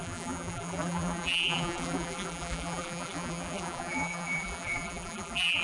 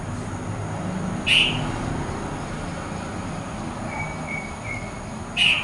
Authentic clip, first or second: second